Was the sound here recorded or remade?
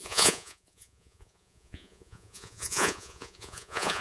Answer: remade